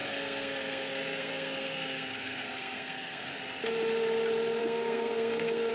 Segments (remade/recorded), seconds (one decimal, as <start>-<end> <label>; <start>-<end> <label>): 0.0-3.4 remade; 3.4-4.6 recorded; 4.6-5.7 remade